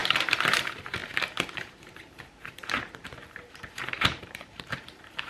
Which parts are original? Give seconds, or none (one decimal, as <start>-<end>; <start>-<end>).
none